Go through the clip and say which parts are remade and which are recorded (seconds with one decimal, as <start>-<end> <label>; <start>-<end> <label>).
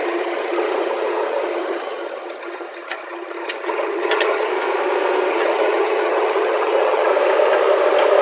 0.0-4.5 remade; 4.5-5.3 recorded; 5.3-7.1 remade; 7.1-8.2 recorded